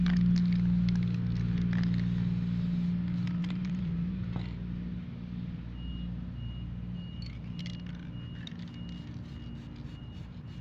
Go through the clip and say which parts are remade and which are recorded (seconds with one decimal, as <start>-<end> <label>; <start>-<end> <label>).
0.0-3.4 recorded; 3.4-4.3 remade; 4.3-10.0 recorded; 10.0-10.6 remade